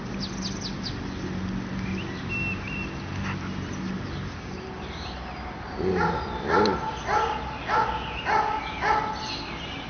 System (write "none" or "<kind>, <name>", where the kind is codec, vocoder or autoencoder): none